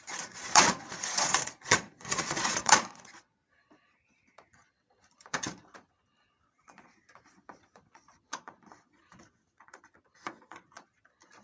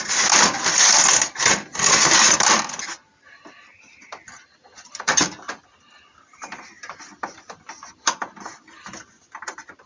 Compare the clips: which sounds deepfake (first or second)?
first